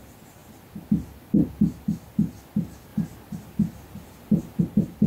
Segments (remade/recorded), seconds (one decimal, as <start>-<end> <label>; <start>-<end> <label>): 0.0-5.1 recorded